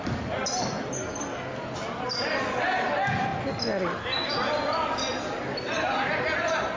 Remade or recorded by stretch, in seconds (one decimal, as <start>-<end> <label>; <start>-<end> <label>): 0.0-6.8 recorded